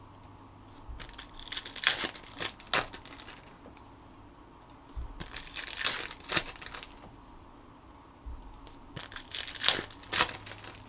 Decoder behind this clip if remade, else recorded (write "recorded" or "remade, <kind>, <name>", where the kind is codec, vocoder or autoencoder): recorded